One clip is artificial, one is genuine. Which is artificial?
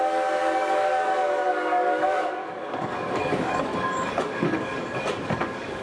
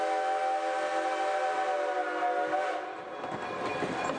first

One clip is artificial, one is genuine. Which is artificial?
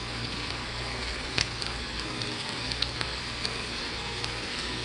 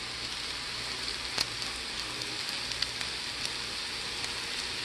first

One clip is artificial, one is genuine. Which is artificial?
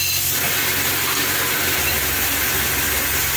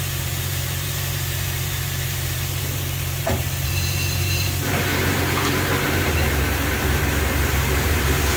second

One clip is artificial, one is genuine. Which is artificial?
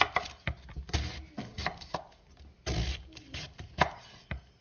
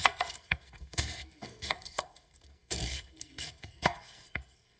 second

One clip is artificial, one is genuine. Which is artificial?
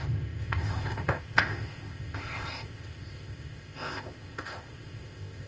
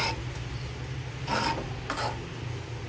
first